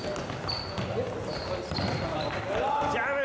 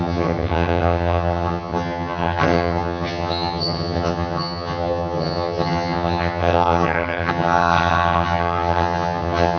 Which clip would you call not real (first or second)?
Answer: second